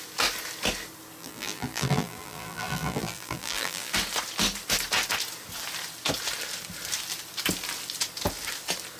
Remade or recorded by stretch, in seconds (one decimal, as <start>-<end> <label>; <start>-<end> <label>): 0.0-1.2 recorded; 1.2-3.9 remade; 3.9-9.0 recorded